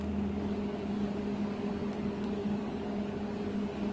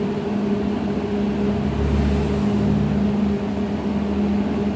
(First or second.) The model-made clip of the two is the first